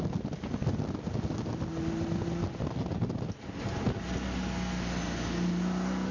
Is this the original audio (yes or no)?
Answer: yes